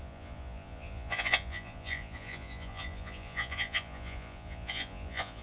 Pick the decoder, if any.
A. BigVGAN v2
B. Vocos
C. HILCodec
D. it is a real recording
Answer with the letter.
B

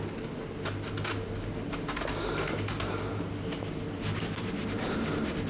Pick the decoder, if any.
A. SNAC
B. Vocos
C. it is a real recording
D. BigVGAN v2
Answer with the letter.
C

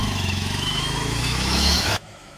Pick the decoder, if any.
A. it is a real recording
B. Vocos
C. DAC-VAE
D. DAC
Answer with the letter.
C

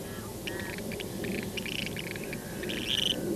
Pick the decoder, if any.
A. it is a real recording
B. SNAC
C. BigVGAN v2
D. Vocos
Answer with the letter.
A